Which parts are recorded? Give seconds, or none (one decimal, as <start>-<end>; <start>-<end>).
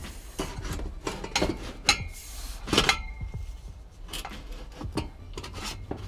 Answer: 0.6-2.2; 4.7-6.1